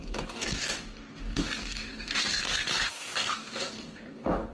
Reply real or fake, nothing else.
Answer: fake